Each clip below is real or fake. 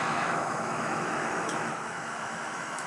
fake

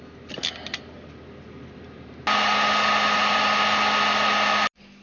real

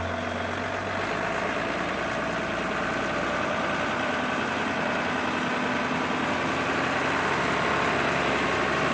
real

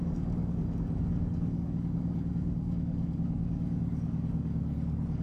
fake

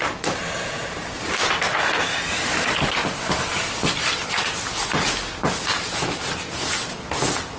real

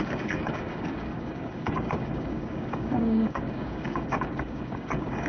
fake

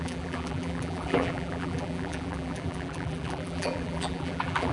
fake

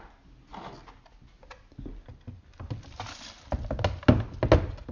real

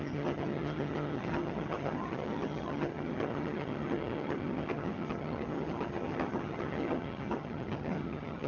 fake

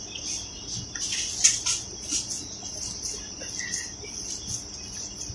real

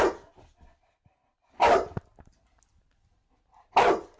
real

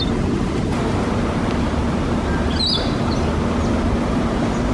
real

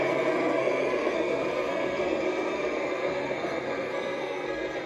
fake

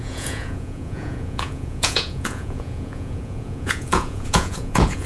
fake